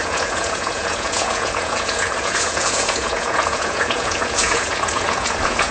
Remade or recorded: remade